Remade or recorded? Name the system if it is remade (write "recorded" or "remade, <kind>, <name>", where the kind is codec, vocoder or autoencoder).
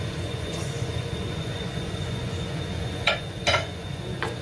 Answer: remade, vocoder, Vocos